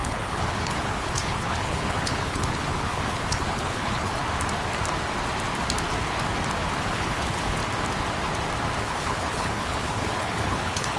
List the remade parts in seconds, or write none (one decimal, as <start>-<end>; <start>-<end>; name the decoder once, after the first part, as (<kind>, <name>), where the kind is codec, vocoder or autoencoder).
0.0-4.2 (codec, HILCodec); 6.8-7.6; 8.8-11.0